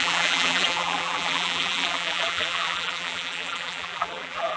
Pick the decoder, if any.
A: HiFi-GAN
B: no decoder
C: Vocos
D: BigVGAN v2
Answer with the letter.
D